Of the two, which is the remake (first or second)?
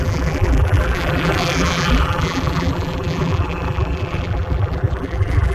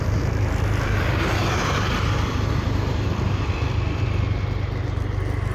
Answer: first